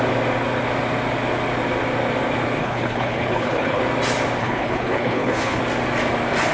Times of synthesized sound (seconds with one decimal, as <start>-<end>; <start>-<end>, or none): 2.6-3.8; 4.4-5.6